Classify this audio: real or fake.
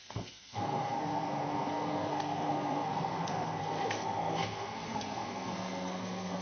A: fake